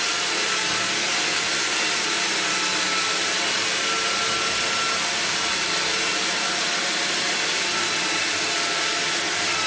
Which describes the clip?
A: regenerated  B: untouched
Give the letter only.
B